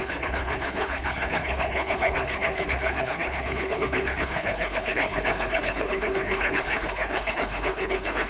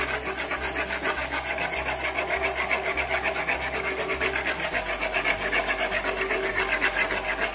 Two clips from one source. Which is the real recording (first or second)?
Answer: second